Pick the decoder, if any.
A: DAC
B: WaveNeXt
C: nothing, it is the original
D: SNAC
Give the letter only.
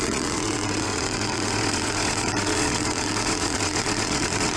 B